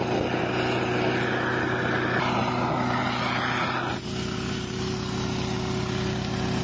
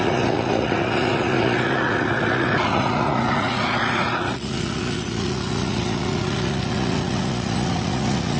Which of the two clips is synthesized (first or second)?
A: second